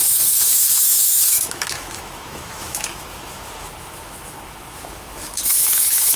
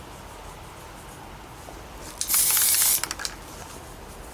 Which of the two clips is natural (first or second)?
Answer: second